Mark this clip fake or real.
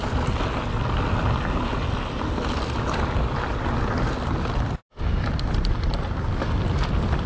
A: real